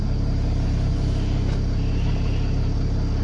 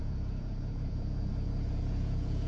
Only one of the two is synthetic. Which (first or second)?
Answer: second